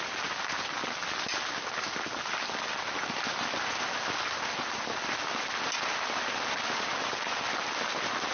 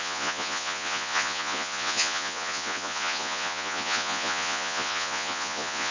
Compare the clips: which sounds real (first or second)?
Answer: first